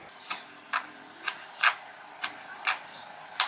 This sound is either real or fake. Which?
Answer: real